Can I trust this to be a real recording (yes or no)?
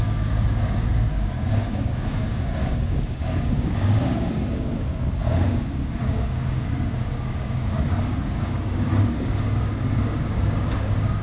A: no